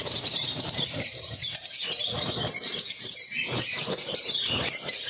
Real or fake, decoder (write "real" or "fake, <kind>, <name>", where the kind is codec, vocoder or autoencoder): fake, vocoder, BigVGAN v2